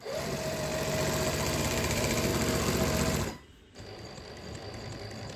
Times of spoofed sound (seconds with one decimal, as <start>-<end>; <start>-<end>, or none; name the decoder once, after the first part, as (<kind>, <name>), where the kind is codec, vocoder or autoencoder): 0.0-0.7 (vocoder, BigVGAN v2); 1.6-2.3; 3.5-5.4